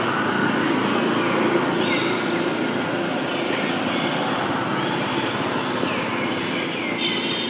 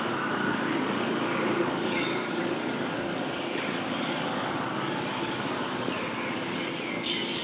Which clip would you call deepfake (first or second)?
second